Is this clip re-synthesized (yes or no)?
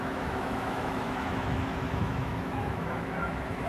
yes